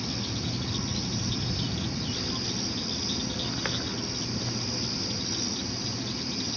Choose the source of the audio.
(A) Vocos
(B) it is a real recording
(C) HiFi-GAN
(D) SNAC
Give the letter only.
B